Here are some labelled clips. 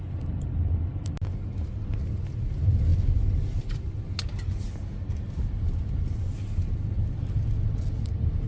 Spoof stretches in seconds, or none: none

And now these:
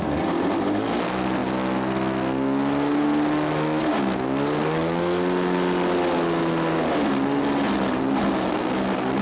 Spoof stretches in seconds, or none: none

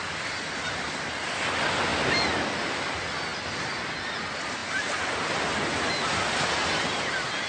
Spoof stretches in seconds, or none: none

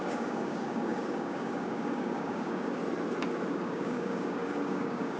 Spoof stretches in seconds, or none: 0.0-2.8 (codec, DAC); 3.5-5.2

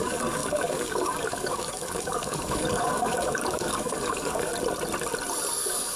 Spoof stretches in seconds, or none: 0.0-4.5 (codec, DAC); 5.6-6.0

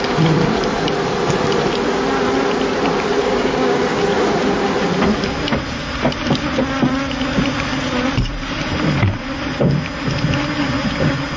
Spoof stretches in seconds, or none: 3.2-3.8 (codec, DAC)

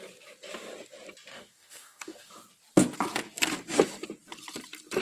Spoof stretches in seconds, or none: 1.3-2.3 (codec, DAC)